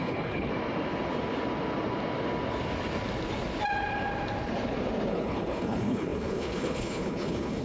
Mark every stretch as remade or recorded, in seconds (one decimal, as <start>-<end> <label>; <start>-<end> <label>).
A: 0.0-0.5 remade; 0.5-5.1 recorded; 5.1-7.6 remade